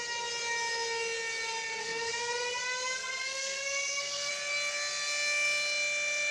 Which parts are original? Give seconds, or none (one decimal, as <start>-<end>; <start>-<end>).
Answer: 0.0-1.8; 2.3-3.0; 4.3-6.3